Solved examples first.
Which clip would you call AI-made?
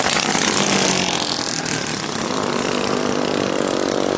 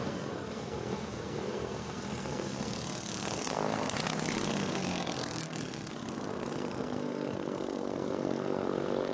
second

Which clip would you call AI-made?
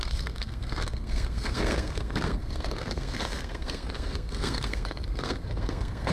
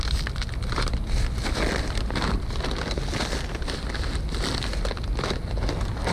first